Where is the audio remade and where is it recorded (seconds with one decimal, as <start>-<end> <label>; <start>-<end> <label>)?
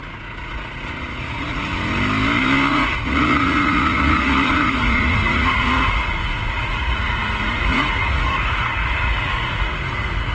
0.0-1.7 remade; 1.7-2.7 recorded; 2.7-10.3 remade